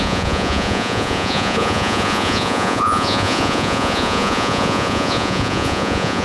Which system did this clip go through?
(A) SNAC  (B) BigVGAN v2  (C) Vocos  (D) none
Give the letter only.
C